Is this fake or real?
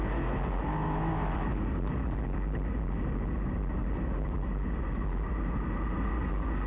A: real